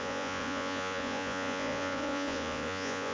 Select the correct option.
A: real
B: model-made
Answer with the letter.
B